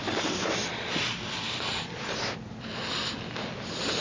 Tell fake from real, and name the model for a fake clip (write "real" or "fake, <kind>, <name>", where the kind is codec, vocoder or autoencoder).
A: real